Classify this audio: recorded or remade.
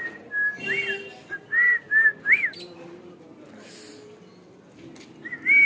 recorded